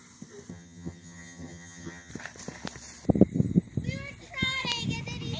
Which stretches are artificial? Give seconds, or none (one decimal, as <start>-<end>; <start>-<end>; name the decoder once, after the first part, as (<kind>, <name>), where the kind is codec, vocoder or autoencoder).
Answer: 0.5-2.1 (vocoder, HiFi-GAN)